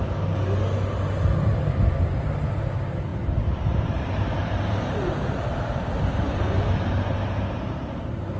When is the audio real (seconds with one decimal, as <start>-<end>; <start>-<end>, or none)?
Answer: 0.0-1.5; 2.6-3.1